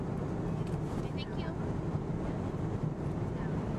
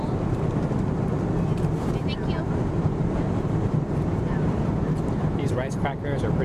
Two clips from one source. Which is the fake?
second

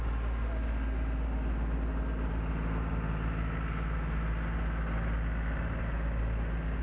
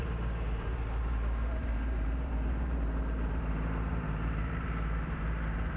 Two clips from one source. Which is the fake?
second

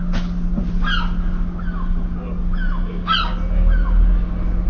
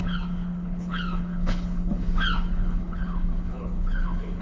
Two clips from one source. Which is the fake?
second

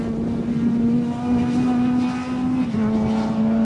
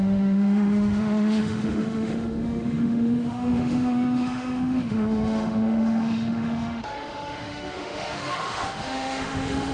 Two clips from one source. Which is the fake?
second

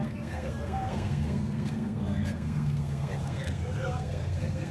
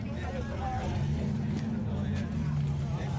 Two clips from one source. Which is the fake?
first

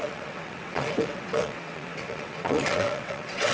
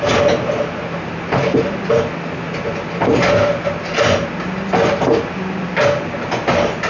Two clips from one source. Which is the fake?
first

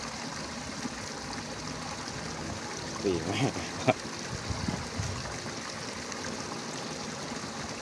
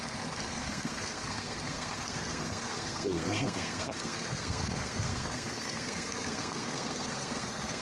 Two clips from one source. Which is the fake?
second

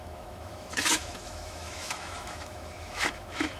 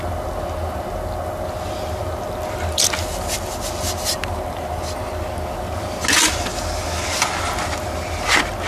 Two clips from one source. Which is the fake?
first